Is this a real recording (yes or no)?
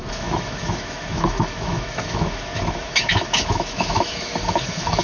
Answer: no